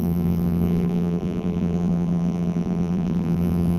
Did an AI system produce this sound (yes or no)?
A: yes